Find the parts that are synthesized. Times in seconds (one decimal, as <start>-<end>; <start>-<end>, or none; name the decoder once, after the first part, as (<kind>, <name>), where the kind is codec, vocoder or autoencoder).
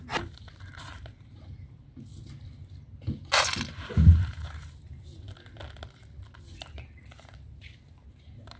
0.0-2.1 (vocoder, BigVGAN v2); 3.7-5.1; 6.4-8.6